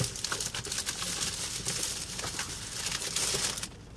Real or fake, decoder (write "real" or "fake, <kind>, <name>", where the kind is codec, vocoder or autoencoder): real